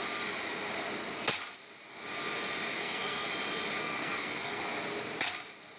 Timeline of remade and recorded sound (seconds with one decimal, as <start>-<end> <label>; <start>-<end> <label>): 0.0-2.7 recorded; 2.7-3.3 remade; 3.3-3.8 recorded; 3.8-4.6 remade; 4.6-5.8 recorded